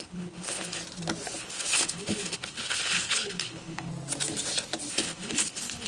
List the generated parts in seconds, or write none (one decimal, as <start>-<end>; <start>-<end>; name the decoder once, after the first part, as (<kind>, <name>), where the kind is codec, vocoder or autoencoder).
0.0-0.8 (codec, HILCodec); 1.4-3.9; 4.9-5.9